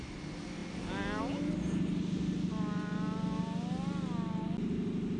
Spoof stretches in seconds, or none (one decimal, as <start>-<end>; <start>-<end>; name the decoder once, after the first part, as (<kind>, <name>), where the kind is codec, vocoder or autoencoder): none